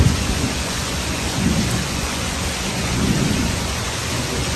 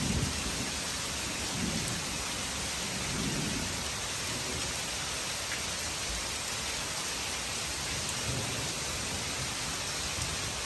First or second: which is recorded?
second